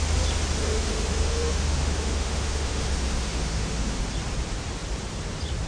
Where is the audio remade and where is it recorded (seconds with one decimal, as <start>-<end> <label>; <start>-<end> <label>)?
0.0-0.6 recorded; 0.6-4.0 remade; 4.0-5.7 recorded